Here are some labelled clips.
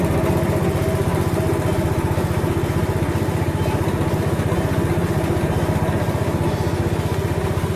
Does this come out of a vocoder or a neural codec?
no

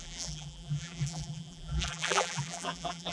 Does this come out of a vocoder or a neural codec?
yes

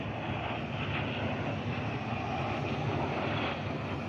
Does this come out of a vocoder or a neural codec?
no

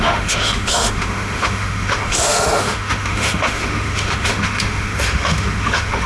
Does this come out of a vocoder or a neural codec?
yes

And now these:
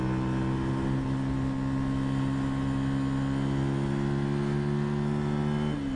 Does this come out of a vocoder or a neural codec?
no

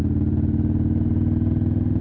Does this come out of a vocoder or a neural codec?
no